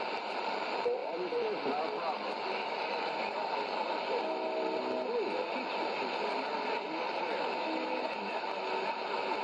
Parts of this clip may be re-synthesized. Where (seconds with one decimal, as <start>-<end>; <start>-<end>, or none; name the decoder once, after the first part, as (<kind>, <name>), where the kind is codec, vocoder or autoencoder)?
none